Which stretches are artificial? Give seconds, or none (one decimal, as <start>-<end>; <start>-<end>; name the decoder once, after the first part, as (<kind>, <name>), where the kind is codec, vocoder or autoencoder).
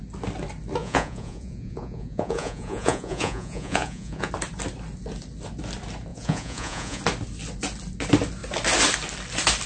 0.8-4.3 (vocoder, Vocos); 6.1-7.0